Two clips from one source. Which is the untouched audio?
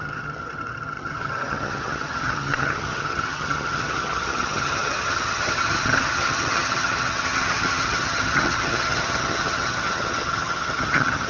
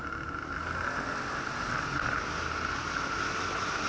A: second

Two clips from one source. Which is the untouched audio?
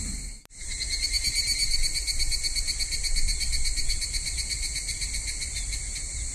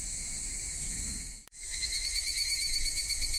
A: first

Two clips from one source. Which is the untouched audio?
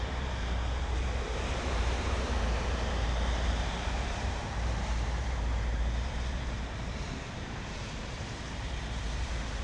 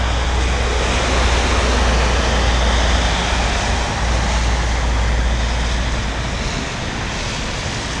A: second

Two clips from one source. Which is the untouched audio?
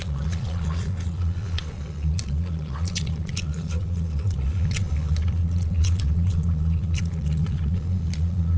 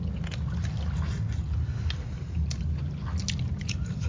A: second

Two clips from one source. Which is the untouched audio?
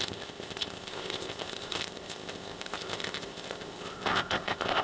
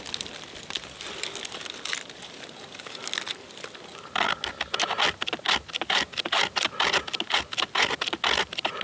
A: second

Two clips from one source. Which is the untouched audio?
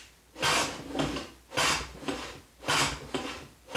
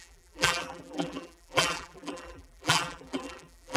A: first